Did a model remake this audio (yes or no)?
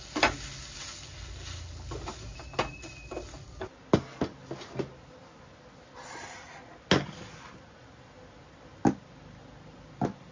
no